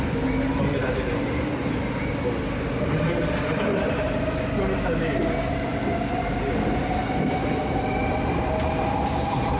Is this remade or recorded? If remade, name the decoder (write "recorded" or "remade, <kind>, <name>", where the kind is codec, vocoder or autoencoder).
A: recorded